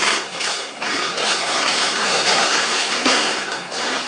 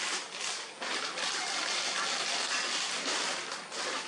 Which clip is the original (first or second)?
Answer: second